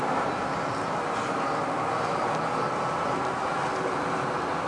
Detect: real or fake real